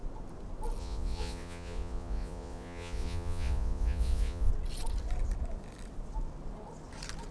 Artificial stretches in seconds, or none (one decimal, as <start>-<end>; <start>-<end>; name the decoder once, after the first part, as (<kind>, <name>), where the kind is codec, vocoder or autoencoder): 0.8-4.5 (vocoder, Vocos)